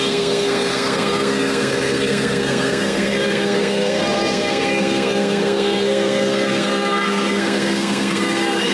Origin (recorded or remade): remade